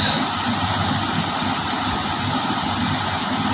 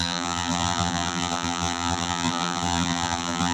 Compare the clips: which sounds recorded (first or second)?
first